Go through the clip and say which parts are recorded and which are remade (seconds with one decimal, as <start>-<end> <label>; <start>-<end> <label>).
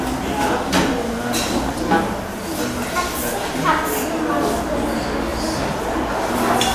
0.0-5.3 recorded; 5.3-6.1 remade; 6.1-6.7 recorded